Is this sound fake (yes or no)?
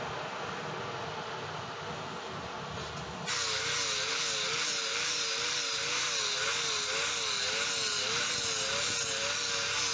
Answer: no